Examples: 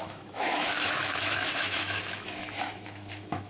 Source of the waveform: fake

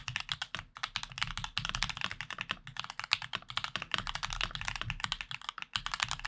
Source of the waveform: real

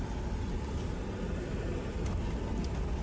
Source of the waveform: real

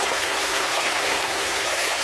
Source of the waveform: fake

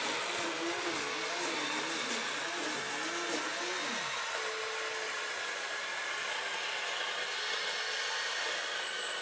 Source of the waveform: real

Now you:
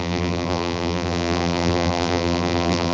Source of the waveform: fake